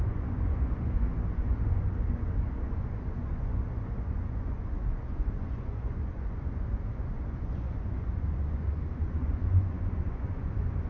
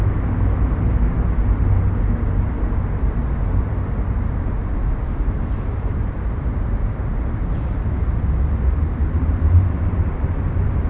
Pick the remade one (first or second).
first